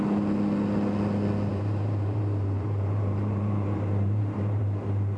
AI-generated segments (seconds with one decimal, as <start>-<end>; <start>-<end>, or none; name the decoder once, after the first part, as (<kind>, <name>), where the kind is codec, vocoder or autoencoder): 1.5-4.6 (vocoder, BigVGAN v2)